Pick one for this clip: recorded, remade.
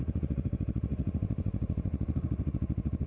remade